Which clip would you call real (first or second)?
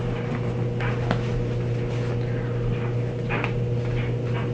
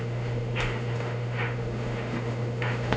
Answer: first